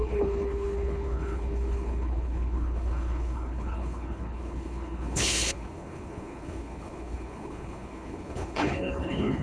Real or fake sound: fake